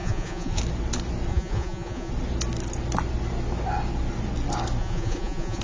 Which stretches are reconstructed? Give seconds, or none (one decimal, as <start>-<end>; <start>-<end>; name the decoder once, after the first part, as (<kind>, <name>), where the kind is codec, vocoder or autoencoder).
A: 0.0-0.6 (vocoder, Vocos); 1.3-2.1; 4.8-5.6